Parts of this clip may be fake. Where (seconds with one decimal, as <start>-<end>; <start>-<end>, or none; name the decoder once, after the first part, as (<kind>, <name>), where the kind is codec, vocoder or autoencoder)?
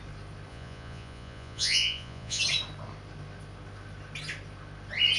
0.5-2.4 (vocoder, Vocos)